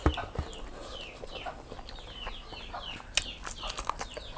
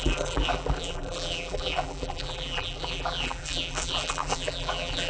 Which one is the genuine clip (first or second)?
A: first